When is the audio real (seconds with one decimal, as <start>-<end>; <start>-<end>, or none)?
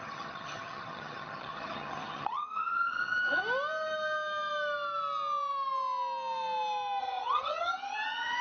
3.4-7.0